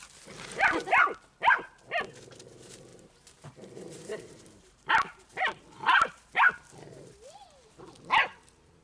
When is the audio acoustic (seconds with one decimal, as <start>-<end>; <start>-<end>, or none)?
0.0-2.9; 6.5-8.8